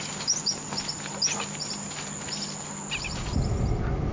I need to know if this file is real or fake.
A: real